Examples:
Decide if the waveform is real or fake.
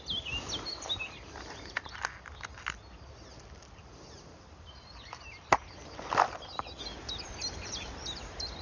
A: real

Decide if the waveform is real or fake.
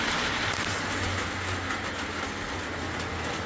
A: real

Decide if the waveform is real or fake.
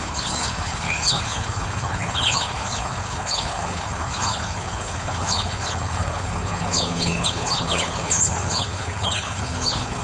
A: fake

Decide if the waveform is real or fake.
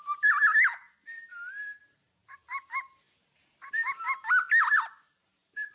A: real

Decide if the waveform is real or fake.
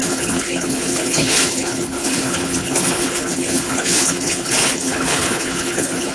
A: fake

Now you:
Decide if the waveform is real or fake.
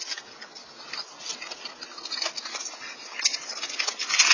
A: real